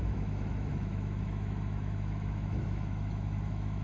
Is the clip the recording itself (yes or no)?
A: no